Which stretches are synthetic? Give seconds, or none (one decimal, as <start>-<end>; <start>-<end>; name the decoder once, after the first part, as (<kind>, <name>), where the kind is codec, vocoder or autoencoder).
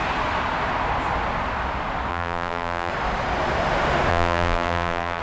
2.1-2.9 (vocoder, BigVGAN v2); 4.1-5.2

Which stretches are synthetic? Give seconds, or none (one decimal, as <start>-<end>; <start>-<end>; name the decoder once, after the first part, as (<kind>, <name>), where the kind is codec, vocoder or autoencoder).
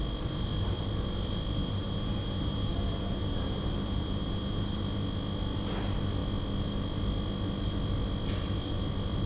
1.6-4.8 (vocoder, BigVGAN v2)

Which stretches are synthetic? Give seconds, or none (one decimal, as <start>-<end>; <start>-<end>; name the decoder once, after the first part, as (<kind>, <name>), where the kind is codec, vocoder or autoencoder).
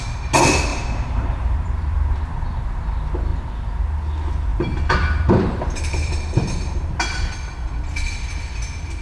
0.7-2.2 (vocoder, BigVGAN v2); 4.5-6.9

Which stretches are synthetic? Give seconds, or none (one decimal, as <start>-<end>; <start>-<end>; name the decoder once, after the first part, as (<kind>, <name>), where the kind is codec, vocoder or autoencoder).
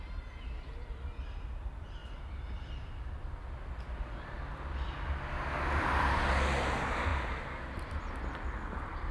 none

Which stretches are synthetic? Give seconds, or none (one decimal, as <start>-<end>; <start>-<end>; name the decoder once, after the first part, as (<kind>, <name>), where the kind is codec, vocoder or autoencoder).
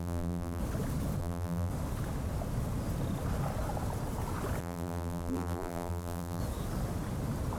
0.0-0.6 (vocoder, BigVGAN v2); 1.2-1.7; 4.6-6.4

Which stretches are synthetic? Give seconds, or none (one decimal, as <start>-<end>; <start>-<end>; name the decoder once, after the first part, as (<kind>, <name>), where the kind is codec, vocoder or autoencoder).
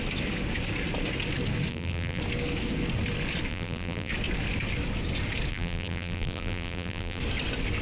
1.7-2.2 (vocoder, BigVGAN v2); 3.5-4.1; 5.5-7.2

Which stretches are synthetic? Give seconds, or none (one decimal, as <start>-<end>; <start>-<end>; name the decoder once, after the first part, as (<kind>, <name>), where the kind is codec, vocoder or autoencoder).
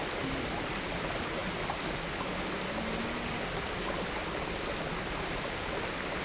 none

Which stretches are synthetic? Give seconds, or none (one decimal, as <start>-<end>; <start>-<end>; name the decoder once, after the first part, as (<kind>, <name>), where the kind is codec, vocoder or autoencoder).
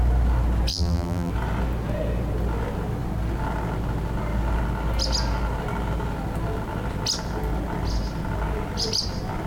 0.7-1.3 (vocoder, BigVGAN v2)